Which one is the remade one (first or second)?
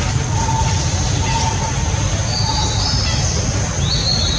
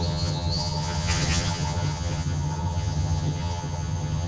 second